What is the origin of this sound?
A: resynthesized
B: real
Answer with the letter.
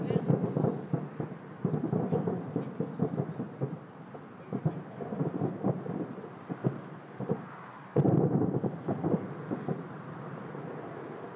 B